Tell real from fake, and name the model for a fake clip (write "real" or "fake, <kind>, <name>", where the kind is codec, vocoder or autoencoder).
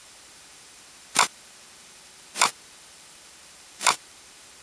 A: fake, vocoder, BigVGAN v2